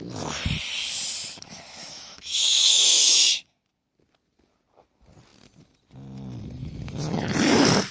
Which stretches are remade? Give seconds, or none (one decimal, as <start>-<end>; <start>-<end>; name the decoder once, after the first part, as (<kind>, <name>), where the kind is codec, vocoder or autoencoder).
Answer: 1.8-3.3 (autoencoder, DAC-VAE)